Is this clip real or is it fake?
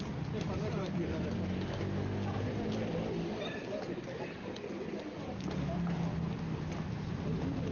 real